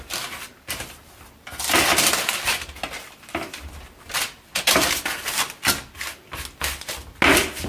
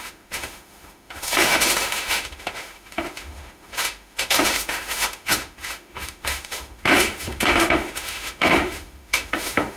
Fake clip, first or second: second